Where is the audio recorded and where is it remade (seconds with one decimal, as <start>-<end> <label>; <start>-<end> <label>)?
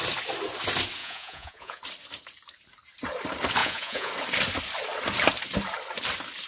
0.0-1.0 recorded; 1.0-1.8 remade; 1.8-3.6 recorded; 3.6-4.1 remade; 4.1-6.5 recorded